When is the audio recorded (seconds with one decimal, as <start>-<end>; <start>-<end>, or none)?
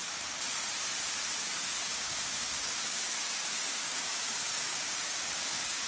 0.0-1.4